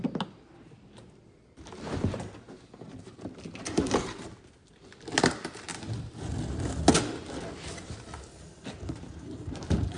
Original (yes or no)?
yes